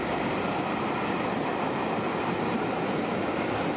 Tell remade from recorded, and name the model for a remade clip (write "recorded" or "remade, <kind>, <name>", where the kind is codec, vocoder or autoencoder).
recorded